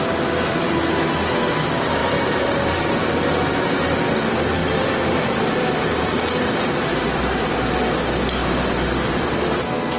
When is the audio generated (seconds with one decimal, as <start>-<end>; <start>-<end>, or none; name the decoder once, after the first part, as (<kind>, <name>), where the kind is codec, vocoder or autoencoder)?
2.0-2.9 (vocoder, BigVGAN v2); 4.6-8.0; 8.4-9.3